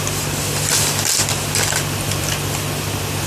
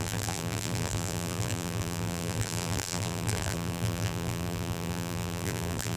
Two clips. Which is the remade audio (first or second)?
second